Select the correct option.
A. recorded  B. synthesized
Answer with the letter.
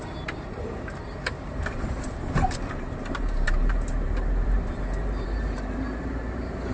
B